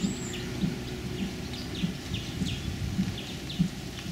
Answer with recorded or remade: recorded